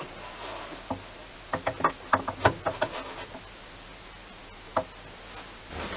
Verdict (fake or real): real